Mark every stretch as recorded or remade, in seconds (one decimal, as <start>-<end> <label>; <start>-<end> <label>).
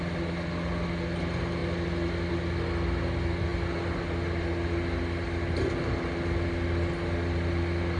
0.0-8.0 recorded